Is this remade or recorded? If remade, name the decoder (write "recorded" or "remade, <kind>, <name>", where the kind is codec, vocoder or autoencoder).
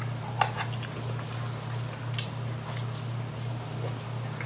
recorded